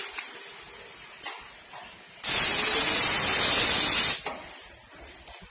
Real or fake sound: real